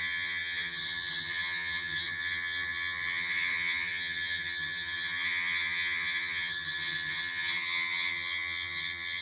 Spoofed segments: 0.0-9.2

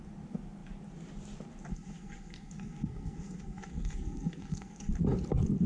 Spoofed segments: 1.7-4.9

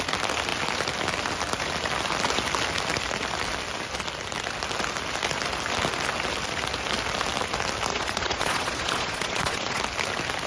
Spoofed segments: 7.9-9.8

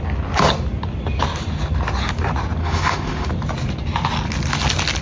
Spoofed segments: 2.6-3.3

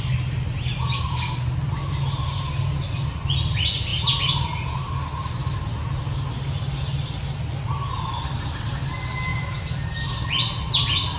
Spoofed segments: none